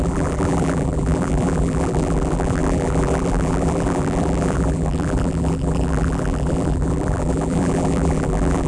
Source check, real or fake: fake